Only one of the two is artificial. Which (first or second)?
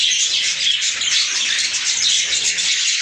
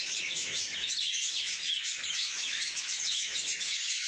second